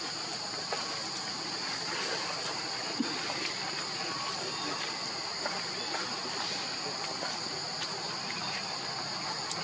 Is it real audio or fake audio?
real